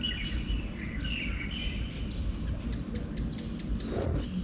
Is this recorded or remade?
recorded